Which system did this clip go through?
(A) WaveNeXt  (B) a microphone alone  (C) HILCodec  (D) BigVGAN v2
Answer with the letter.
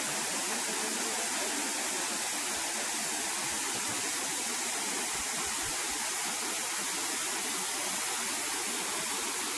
B